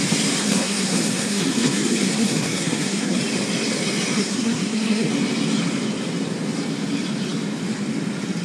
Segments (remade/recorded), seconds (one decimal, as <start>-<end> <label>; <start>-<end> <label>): 0.0-0.4 recorded; 0.4-3.2 remade; 3.2-4.2 recorded; 4.2-5.1 remade; 5.1-8.4 recorded